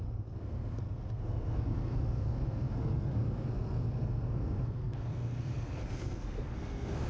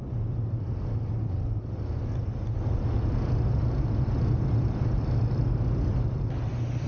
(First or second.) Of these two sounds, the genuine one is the second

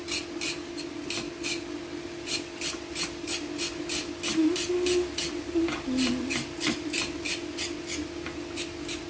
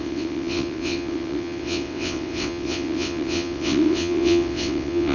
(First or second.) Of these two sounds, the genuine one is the first